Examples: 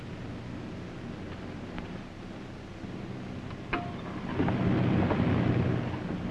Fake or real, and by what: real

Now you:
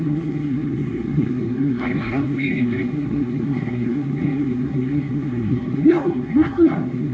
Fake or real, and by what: fake, codec, SNAC